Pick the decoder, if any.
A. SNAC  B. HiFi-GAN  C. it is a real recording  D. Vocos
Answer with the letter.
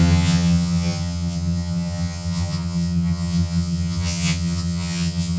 B